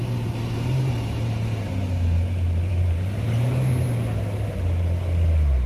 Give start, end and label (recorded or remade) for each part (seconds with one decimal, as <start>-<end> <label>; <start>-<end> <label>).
0.0-0.9 remade; 0.9-2.7 recorded; 2.7-3.7 remade; 3.7-5.7 recorded